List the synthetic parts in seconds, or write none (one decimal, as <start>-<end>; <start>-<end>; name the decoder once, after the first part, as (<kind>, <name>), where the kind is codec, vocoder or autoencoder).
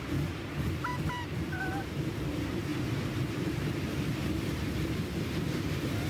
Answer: 0.0-2.7 (vocoder, BigVGAN v2); 3.2-4.2; 5.3-6.1